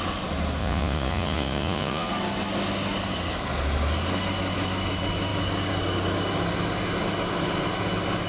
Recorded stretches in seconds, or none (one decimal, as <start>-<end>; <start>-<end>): 0.0-0.6; 2.1-8.3